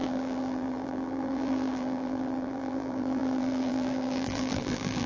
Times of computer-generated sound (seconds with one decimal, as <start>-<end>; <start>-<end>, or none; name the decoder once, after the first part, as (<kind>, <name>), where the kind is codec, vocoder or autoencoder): 0.0-5.1 (vocoder, BigVGAN v2)